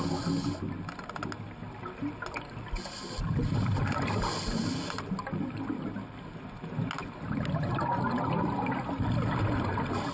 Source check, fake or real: real